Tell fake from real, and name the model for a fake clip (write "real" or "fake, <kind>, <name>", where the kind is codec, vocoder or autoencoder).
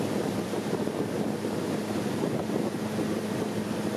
real